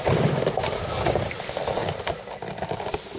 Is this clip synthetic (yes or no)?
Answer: no